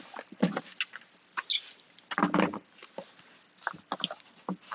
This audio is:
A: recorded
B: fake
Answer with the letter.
A